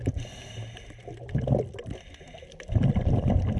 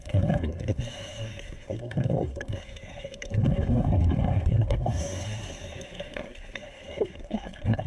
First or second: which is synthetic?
second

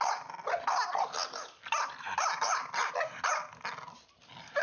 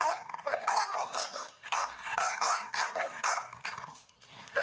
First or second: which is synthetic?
second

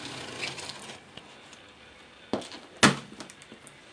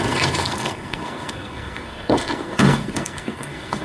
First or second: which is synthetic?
second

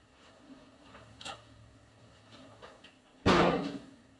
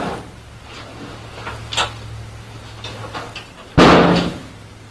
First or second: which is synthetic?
first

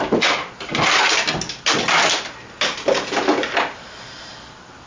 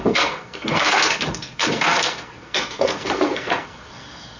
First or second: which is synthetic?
second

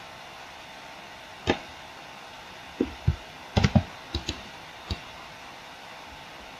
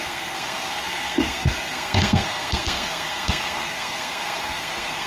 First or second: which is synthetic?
second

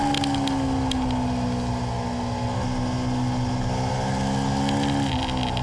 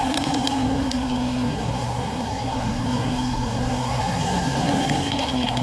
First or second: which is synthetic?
second